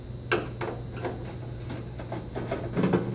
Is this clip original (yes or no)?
yes